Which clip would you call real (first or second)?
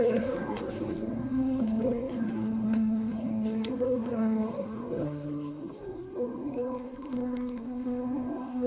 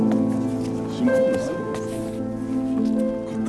second